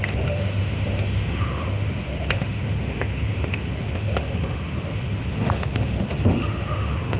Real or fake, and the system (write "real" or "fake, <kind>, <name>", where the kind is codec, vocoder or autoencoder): fake, autoencoder, DAC-VAE